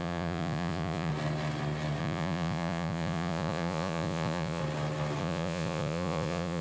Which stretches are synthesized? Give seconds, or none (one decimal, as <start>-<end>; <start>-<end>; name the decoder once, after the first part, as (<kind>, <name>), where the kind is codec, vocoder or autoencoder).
0.0-1.1 (vocoder, Vocos); 2.0-4.6; 5.2-6.6